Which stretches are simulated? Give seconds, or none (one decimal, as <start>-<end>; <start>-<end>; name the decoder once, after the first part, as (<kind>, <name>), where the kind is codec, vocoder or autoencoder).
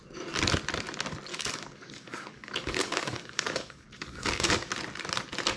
1.3-4.7 (codec, DAC)